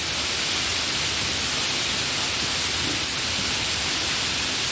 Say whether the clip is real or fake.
real